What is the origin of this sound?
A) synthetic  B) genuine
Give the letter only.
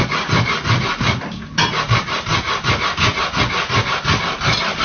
B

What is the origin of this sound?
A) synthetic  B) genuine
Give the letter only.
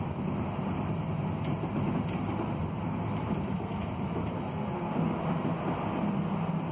B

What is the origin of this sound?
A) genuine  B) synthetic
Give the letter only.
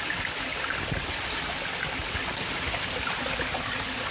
A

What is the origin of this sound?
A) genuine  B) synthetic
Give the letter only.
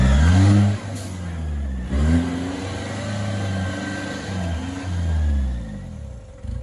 A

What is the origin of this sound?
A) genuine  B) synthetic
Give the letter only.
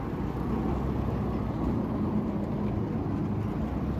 A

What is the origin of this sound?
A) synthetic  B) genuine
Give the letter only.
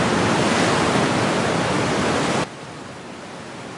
B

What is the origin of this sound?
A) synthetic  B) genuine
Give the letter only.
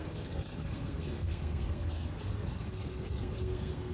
A